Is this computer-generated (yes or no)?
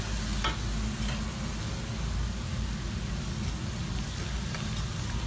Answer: no